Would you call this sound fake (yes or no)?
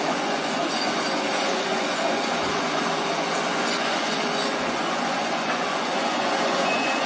yes